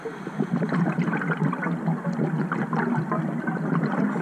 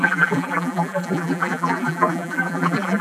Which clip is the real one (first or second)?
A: first